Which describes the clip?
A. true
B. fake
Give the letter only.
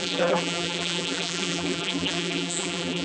B